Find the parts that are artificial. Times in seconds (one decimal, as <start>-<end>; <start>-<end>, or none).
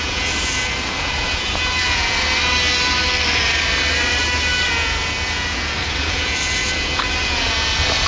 0.0-2.3; 4.7-8.1